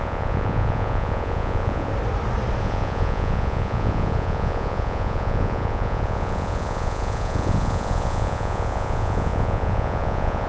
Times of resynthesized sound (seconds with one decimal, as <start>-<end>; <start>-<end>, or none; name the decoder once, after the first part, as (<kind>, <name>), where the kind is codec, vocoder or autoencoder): 0.0-1.9 (vocoder, Vocos); 2.6-10.5